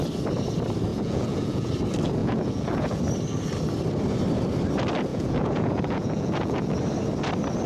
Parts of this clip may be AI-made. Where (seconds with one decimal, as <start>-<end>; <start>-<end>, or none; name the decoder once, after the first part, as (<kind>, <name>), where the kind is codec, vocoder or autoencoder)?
0.9-1.7 (vocoder, Vocos); 2.2-3.0; 5.1-6.8